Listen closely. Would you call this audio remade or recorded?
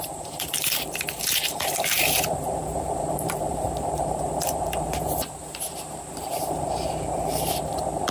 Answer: remade